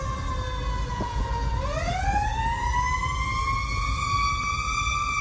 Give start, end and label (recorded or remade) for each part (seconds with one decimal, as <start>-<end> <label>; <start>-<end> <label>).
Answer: 0.0-0.9 recorded; 0.9-1.5 remade; 1.5-5.2 recorded